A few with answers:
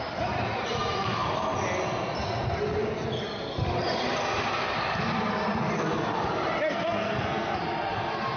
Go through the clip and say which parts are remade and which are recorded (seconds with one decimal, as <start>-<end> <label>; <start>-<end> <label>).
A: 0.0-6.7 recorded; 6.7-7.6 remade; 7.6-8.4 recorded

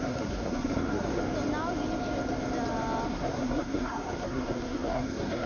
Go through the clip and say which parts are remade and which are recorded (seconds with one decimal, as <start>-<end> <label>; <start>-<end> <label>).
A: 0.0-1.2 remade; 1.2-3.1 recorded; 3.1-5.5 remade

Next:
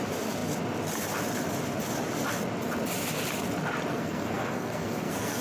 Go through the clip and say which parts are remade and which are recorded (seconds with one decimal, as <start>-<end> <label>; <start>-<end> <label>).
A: 0.0-3.9 recorded; 3.9-5.4 remade

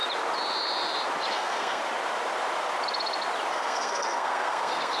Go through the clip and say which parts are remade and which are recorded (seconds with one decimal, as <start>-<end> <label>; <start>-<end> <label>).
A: 0.0-1.3 recorded; 1.3-1.8 remade; 1.8-3.5 recorded; 3.5-5.0 remade

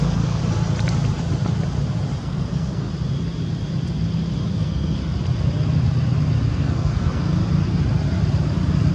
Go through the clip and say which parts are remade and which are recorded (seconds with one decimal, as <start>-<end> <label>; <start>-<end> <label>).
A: 0.0-0.4 remade; 0.4-2.2 recorded; 2.2-2.9 remade; 2.9-4.5 recorded; 4.5-5.0 remade; 5.0-6.5 recorded; 6.5-7.4 remade; 7.4-8.9 recorded

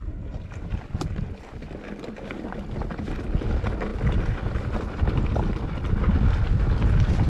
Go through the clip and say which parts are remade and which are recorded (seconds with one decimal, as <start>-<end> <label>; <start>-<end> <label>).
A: 0.0-7.3 recorded